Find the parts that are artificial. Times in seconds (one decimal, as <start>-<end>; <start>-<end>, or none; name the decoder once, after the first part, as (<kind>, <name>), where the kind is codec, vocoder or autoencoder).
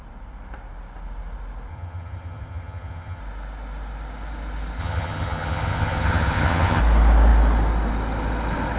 1.7-3.2 (vocoder, HiFi-GAN); 4.8-6.8